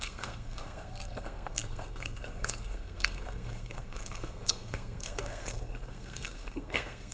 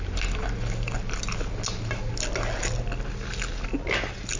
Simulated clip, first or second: first